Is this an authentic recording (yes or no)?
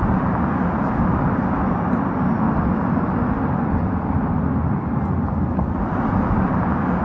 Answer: yes